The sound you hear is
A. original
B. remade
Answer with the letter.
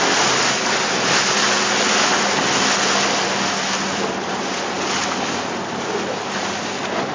A